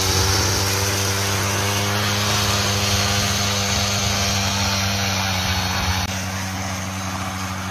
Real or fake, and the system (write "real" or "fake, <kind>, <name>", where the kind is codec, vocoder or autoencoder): real